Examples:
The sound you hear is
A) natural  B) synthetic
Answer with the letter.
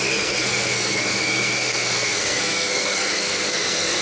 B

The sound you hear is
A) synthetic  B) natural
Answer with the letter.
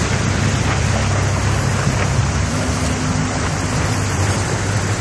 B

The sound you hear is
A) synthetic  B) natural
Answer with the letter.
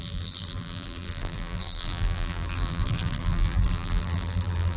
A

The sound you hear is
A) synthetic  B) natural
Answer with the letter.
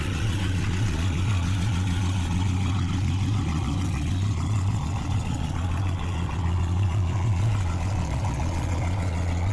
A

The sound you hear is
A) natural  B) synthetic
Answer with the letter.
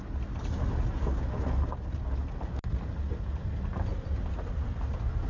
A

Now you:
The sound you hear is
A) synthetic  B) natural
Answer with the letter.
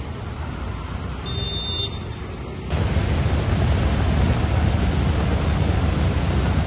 B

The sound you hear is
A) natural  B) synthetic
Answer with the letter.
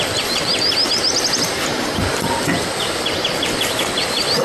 A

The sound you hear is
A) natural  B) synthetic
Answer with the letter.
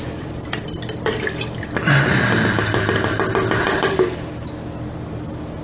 A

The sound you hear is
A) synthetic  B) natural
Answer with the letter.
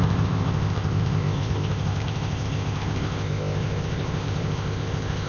A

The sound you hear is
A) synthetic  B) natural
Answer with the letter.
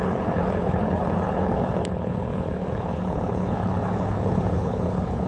A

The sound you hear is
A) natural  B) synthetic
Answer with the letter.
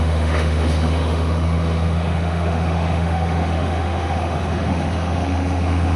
B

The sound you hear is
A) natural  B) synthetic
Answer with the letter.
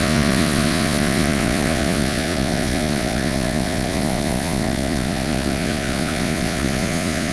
B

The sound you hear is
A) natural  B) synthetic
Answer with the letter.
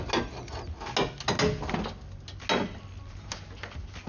A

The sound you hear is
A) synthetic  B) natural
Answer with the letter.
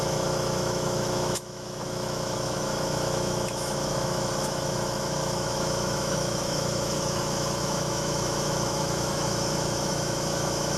A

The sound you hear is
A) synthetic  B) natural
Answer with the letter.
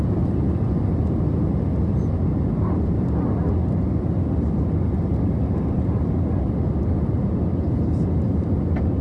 B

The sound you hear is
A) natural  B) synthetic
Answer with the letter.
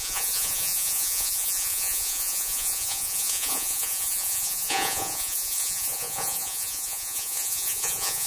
B